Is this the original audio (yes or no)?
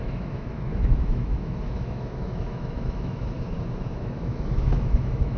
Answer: no